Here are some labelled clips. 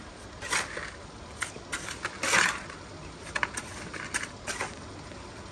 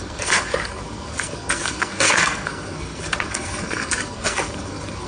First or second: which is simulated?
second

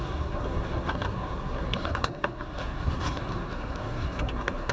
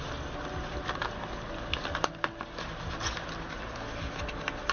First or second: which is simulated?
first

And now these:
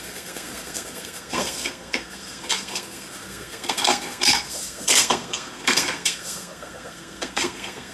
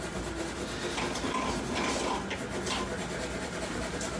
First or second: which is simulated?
first